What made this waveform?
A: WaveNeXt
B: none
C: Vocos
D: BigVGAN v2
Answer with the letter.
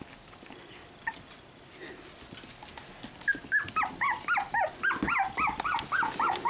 B